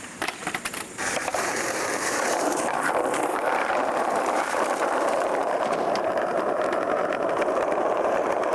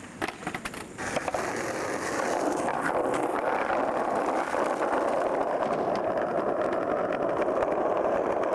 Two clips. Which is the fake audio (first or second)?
first